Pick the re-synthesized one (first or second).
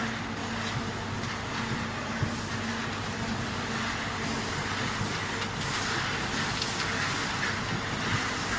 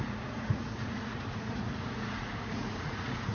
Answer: second